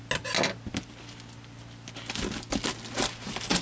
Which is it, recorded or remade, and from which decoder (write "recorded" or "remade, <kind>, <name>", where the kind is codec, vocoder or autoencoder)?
recorded